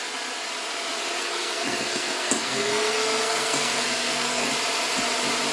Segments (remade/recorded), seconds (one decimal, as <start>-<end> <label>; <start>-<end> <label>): 0.0-1.2 recorded; 1.2-4.5 remade; 4.5-5.5 recorded